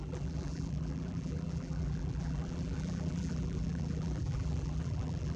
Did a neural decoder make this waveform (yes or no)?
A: yes